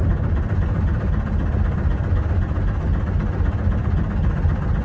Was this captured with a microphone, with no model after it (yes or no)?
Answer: yes